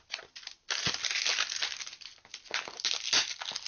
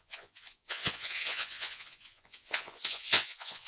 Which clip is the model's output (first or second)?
second